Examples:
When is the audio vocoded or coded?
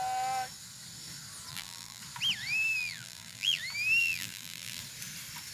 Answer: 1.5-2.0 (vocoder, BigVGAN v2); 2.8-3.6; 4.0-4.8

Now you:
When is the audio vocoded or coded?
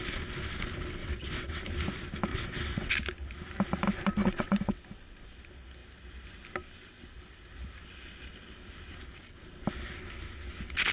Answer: 1.0-1.6 (vocoder, WaveNeXt); 2.3-2.9; 4.2-4.8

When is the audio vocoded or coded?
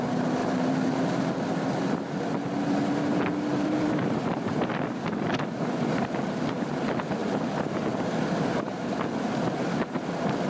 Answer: 0.4-1.0 (vocoder, BigVGAN v2); 3.5-4.5